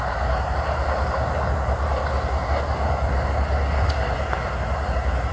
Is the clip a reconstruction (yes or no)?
no